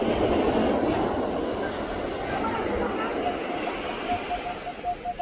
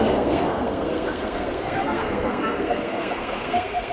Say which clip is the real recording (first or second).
first